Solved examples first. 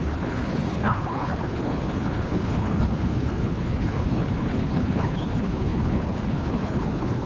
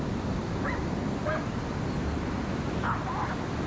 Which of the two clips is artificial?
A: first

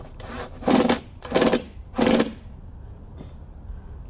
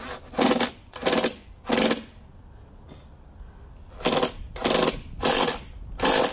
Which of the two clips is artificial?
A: first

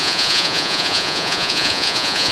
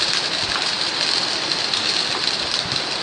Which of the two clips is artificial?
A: first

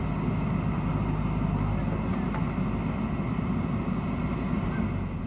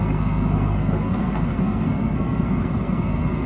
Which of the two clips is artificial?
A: second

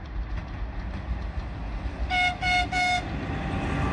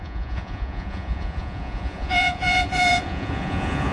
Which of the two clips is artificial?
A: second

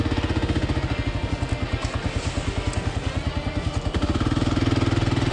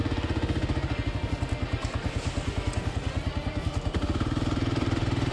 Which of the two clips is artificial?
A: second